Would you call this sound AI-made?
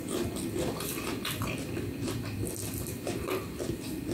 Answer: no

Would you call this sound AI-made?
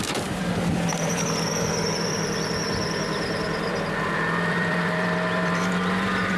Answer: yes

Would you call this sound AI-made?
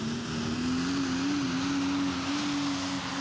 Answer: no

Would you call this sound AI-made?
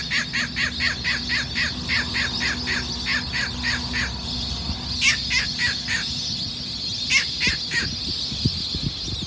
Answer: no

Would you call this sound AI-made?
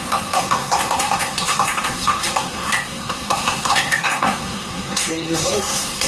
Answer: yes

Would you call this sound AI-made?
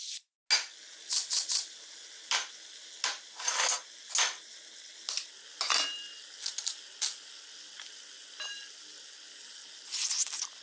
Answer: no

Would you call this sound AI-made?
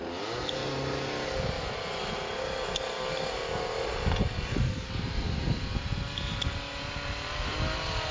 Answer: no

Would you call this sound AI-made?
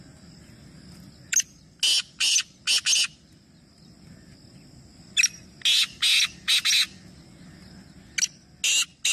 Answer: no